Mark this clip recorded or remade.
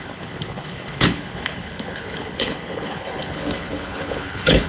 remade